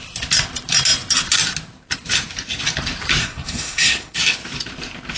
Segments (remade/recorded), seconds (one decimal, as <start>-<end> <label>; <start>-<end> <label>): 0.0-3.2 recorded; 3.2-4.2 remade; 4.2-5.2 recorded